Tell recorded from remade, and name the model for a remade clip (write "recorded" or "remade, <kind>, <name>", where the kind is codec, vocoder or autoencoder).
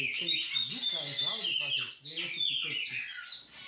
recorded